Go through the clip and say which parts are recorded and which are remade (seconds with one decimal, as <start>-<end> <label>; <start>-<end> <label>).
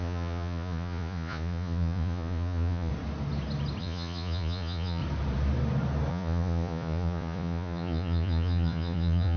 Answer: 0.0-2.9 remade; 2.9-3.8 recorded; 3.8-5.0 remade; 5.0-6.1 recorded; 6.1-9.4 remade